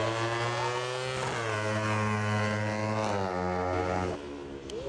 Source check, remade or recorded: recorded